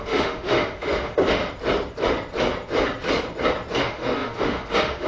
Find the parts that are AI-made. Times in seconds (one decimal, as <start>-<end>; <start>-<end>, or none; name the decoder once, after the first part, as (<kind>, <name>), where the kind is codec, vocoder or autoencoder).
0.0-1.4 (autoencoder, DAC-VAE); 3.8-5.1